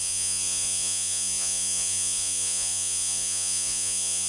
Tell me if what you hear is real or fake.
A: fake